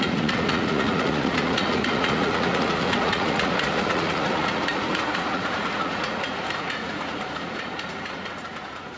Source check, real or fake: fake